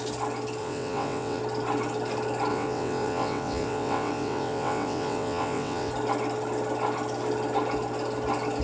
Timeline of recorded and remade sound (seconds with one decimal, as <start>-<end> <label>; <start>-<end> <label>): 0.0-0.6 recorded; 0.6-1.4 remade; 1.4-2.5 recorded; 2.5-5.9 remade; 5.9-8.6 recorded